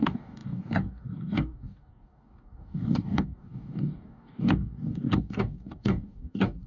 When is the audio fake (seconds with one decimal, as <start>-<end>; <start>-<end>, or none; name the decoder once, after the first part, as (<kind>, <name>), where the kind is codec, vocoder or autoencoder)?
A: 0.0-6.7 (codec, DAC)